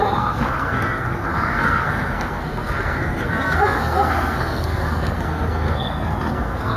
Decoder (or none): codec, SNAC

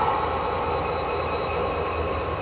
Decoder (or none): none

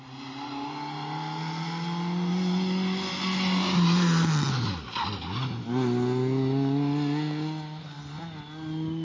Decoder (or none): none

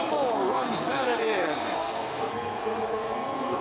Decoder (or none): codec, SNAC